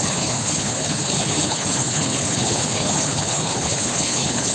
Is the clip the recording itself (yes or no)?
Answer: no